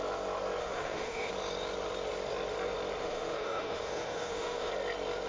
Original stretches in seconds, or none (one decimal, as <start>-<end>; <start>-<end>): 0.0-0.6; 1.3-3.0; 4.7-5.3